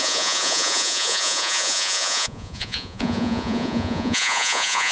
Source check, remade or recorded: remade